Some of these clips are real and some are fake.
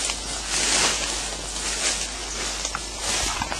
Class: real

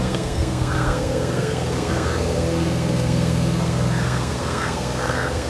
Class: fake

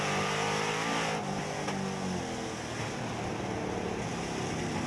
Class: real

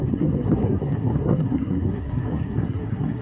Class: fake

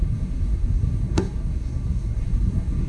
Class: fake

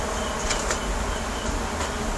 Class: real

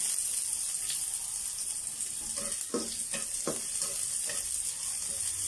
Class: real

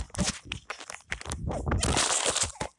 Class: real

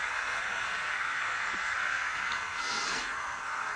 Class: fake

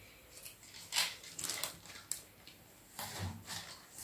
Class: real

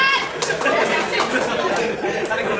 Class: real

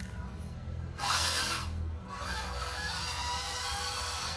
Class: fake